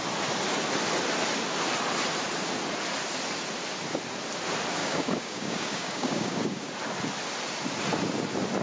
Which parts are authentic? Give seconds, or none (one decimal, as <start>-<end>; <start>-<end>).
0.0-4.8; 6.6-8.6